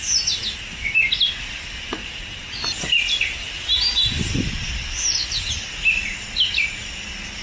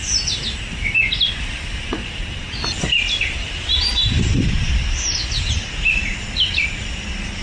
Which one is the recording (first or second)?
first